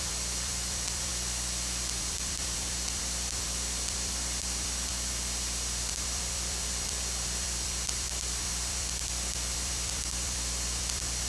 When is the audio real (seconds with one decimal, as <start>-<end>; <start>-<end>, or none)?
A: 1.1-2.0; 4.9-5.9